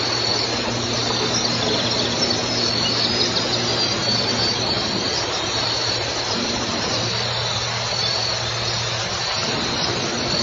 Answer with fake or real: real